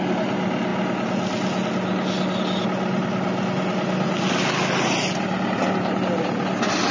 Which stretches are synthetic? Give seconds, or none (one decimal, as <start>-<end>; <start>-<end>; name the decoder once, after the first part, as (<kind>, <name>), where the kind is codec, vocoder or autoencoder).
none